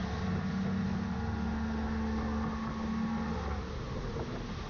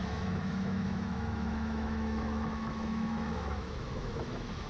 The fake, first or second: second